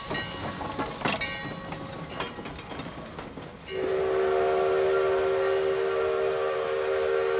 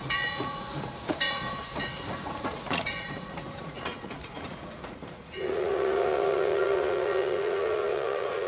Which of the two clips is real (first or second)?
first